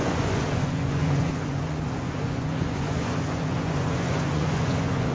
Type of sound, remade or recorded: remade